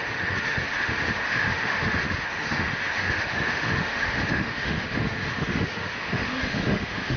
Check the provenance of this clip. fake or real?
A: fake